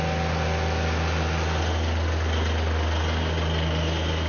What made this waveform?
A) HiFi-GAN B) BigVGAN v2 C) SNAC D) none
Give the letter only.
D